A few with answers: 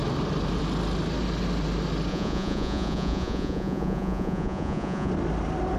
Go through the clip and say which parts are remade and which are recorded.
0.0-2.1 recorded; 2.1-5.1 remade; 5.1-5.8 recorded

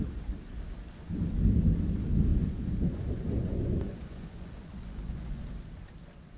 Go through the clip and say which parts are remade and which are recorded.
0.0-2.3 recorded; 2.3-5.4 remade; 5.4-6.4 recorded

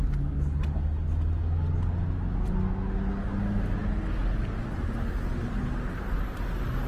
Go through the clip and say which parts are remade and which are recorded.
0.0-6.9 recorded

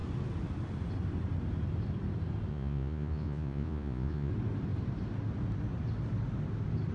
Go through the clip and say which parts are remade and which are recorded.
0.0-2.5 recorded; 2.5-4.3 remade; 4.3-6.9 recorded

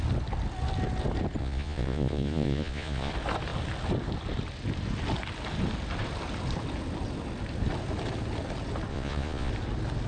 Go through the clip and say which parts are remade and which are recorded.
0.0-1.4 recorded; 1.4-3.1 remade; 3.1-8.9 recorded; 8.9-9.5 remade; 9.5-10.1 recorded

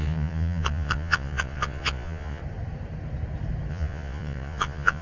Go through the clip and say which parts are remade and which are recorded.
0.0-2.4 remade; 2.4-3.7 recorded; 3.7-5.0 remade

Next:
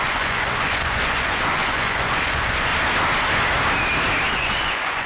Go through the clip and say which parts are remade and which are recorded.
0.0-2.7 remade; 2.7-4.3 recorded; 4.3-5.1 remade

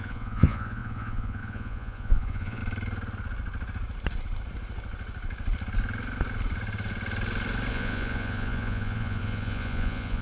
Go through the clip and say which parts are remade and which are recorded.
0.0-2.6 remade; 2.6-7.7 recorded; 7.7-10.2 remade